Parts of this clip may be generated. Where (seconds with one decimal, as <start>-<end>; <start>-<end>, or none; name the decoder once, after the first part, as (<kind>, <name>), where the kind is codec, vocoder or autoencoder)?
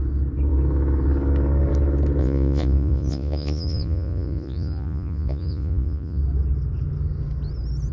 2.2-6.2 (vocoder, Vocos)